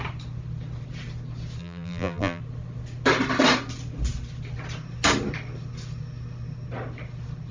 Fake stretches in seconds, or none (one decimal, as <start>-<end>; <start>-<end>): 1.6-2.4